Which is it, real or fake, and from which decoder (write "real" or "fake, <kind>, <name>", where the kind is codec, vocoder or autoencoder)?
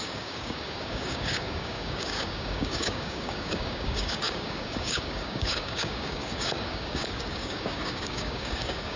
fake, codec, DAC